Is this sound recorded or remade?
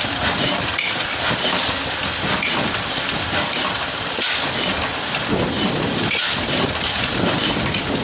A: remade